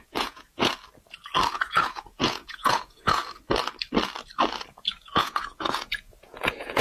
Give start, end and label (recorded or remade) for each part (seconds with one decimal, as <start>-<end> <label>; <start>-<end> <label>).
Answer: 0.0-0.7 remade; 0.7-1.5 recorded; 1.5-3.2 remade; 3.2-4.7 recorded; 4.7-6.8 remade